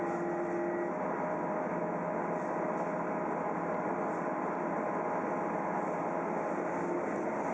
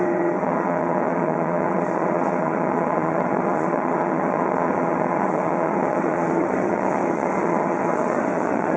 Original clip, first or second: first